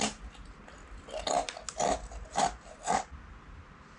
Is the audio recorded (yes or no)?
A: yes